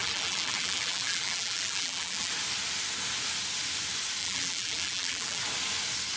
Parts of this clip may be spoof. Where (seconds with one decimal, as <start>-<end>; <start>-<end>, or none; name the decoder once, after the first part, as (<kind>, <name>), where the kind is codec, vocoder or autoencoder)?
0.0-2.3 (vocoder, BigVGAN v2); 4.2-5.4